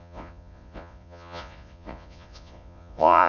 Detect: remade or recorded remade